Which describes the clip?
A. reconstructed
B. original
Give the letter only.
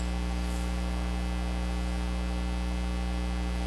B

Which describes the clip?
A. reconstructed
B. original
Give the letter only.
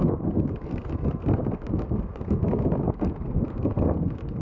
A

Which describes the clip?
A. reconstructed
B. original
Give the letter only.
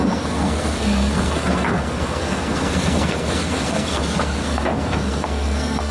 A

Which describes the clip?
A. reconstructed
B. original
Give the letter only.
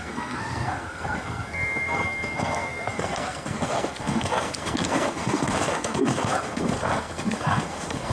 A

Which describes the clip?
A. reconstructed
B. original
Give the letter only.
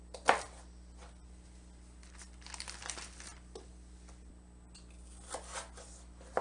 B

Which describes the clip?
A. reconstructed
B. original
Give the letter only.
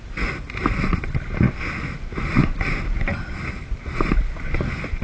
B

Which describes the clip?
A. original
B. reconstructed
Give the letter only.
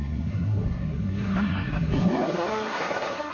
B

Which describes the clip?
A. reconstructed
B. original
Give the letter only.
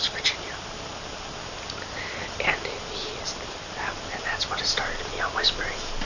B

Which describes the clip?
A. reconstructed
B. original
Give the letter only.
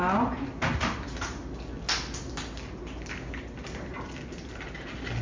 B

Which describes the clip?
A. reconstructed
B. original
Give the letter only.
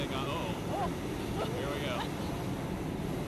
B